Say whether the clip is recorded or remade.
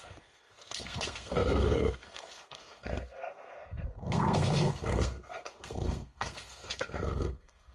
remade